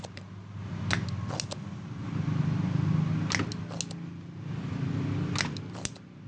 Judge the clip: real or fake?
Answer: real